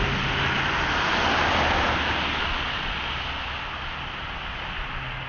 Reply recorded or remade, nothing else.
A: recorded